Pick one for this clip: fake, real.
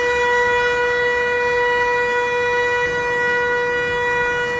real